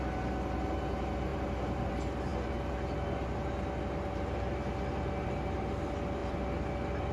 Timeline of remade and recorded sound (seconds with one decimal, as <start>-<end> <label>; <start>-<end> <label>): 0.0-7.1 recorded